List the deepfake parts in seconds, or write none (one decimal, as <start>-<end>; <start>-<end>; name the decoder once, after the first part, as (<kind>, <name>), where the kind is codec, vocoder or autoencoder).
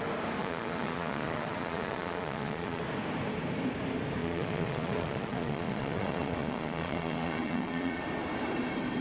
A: 0.4-2.8 (vocoder, Vocos); 4.2-8.0